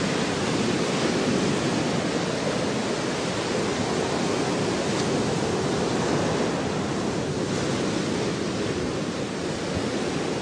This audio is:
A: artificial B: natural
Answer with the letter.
B